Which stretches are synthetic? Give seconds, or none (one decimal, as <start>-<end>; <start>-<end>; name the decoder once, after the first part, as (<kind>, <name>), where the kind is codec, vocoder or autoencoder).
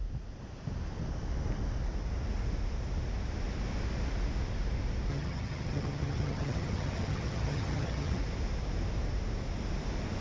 5.1-8.2 (vocoder, HiFi-GAN)